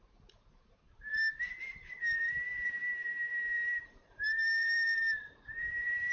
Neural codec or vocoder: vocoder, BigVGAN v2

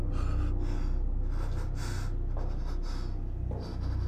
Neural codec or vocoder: none